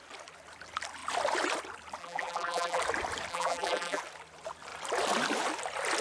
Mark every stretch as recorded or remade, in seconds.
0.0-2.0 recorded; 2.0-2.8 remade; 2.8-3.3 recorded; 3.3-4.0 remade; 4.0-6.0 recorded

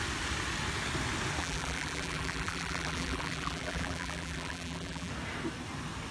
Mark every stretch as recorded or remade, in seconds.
0.0-1.4 recorded; 1.4-5.1 remade; 5.1-6.1 recorded

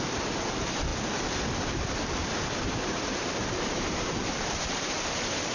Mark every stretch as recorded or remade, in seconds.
0.0-2.2 recorded; 2.2-5.5 remade